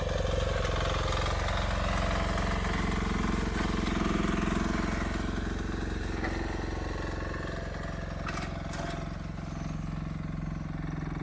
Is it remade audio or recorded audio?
recorded